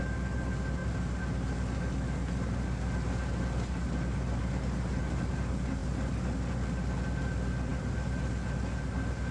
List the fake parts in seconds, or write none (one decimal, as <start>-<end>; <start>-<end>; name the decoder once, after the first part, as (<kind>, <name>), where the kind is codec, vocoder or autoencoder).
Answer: none